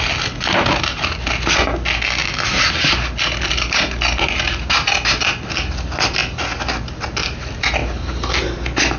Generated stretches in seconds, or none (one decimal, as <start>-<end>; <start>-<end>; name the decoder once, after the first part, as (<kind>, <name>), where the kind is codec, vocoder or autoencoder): none